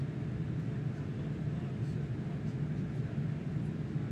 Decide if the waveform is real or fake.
real